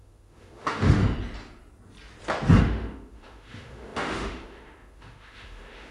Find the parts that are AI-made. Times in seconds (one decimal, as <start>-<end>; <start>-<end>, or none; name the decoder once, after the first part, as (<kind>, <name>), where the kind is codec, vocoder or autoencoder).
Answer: 0.0-1.0 (autoencoder, DAC-VAE); 2.6-5.9